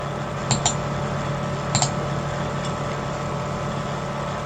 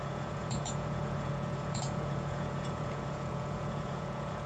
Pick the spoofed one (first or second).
second